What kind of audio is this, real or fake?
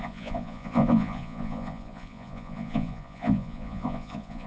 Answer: fake